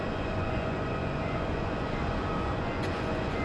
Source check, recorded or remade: remade